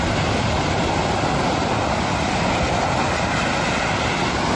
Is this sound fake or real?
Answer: real